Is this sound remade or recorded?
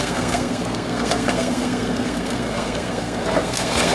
remade